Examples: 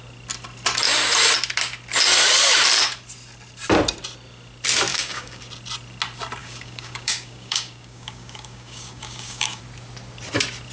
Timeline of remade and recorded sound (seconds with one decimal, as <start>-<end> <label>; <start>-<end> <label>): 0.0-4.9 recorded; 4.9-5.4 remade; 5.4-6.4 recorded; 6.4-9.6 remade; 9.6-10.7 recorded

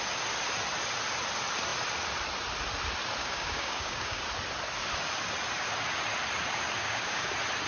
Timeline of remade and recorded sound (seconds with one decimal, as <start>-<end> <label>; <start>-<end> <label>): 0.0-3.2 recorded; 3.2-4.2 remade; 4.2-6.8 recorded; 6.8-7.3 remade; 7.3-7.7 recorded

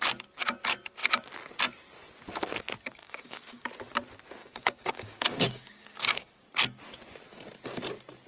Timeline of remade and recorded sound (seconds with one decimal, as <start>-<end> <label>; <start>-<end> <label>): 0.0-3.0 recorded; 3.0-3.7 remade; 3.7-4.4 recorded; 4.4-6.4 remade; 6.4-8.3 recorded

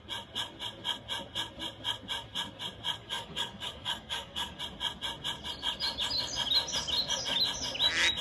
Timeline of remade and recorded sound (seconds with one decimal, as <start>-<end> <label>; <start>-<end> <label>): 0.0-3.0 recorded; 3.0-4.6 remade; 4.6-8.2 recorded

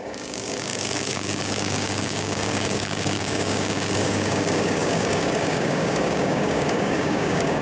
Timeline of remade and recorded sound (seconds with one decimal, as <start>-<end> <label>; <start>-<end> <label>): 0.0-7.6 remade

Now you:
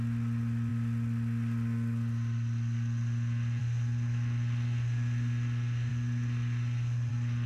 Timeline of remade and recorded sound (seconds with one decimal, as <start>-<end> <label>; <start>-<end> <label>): 0.0-7.5 recorded

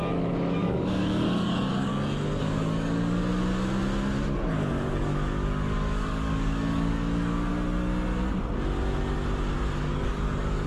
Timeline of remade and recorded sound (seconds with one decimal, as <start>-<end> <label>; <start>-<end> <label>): 0.0-1.9 remade; 1.9-2.4 recorded; 2.4-3.2 remade; 3.2-4.9 recorded; 4.9-7.5 remade; 7.5-9.8 recorded; 9.8-10.7 remade

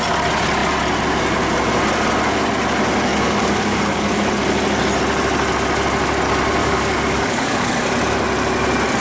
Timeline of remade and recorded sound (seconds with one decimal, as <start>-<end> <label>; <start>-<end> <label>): 0.0-3.1 recorded; 3.1-4.3 remade; 4.3-6.6 recorded; 6.6-7.7 remade; 7.7-9.0 recorded